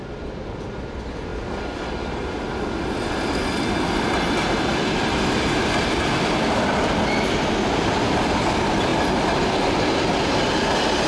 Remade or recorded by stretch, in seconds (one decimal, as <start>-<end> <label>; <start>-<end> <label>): 0.0-8.9 recorded; 8.9-9.9 remade; 9.9-11.1 recorded